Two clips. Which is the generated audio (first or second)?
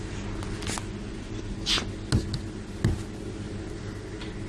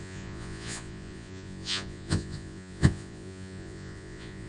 second